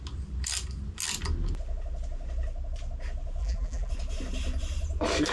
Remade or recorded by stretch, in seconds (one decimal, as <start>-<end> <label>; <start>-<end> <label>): 0.0-3.4 recorded; 3.4-3.9 remade; 3.9-5.3 recorded